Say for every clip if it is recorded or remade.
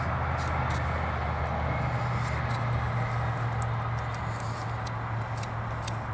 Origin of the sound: recorded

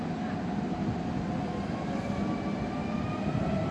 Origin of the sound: recorded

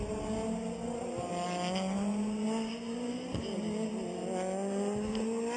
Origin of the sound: recorded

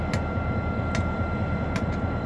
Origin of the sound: recorded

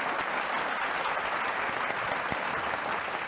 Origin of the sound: recorded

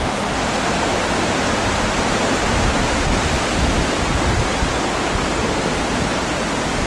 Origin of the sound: recorded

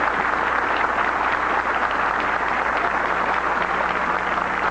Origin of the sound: recorded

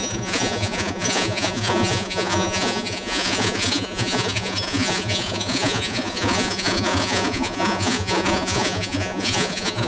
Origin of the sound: remade